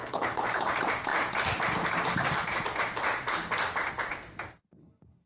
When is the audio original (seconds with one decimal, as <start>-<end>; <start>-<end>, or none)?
0.7-5.3